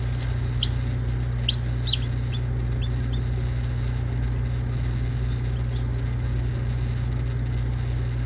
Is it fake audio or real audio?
real